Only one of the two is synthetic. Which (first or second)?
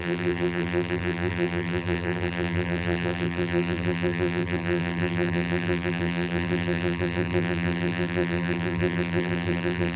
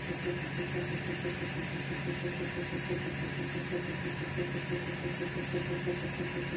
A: first